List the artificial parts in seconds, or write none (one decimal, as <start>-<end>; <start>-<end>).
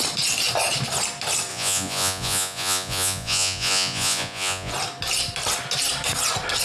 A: 1.5-4.7